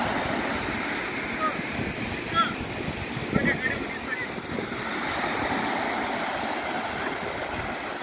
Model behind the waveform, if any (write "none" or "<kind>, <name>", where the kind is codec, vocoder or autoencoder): none